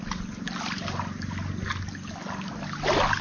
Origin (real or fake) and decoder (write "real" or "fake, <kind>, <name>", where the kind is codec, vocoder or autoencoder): real